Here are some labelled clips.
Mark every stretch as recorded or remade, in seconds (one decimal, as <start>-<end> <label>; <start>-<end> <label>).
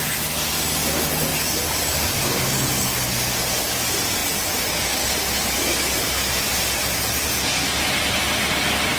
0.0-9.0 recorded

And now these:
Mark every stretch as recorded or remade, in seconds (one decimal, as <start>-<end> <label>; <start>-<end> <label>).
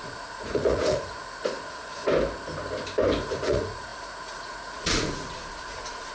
0.0-2.0 remade; 2.0-3.2 recorded; 3.2-6.1 remade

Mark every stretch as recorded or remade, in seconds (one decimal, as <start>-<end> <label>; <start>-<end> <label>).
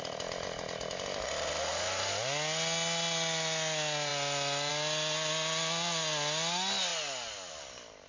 0.0-8.1 recorded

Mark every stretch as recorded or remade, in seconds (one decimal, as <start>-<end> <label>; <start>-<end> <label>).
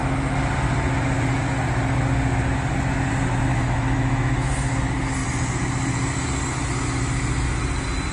0.0-3.5 recorded; 3.5-4.8 remade; 4.8-8.1 recorded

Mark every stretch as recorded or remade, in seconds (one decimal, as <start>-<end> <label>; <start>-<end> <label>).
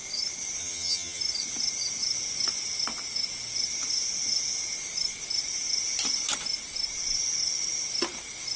0.0-0.6 recorded; 0.6-1.2 remade; 1.2-8.6 recorded